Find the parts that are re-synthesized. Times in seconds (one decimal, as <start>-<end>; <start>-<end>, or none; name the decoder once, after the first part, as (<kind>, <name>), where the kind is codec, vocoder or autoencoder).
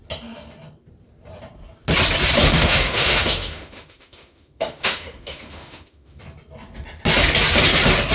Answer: 2.5-6.2 (autoencoder, DAC-VAE)